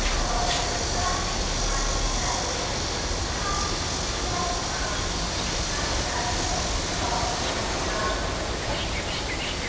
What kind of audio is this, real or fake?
real